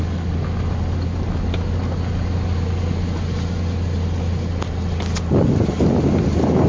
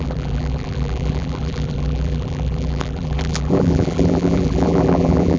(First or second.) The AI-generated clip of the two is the second